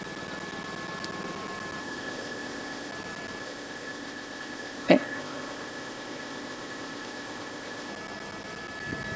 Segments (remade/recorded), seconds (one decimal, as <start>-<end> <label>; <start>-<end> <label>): 0.0-1.8 recorded; 1.8-2.9 remade; 2.9-3.4 recorded; 3.4-7.9 remade; 7.9-9.2 recorded